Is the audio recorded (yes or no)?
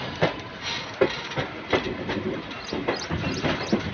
yes